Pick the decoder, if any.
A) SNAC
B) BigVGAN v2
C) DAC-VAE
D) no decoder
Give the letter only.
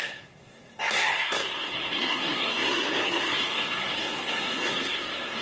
A